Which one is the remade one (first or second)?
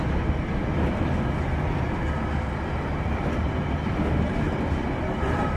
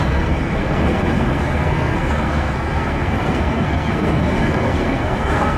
second